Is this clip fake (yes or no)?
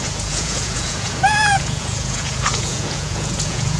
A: yes